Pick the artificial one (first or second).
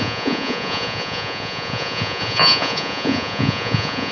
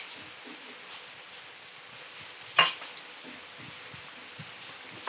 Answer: first